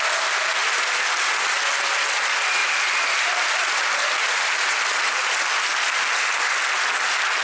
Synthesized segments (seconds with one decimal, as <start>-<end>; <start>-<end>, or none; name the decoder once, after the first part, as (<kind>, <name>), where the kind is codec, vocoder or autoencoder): 0.6-1.5 (vocoder, BigVGAN v2); 2.6-4.6